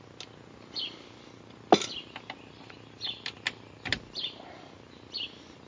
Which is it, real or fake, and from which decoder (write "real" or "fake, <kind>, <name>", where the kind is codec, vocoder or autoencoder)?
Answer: real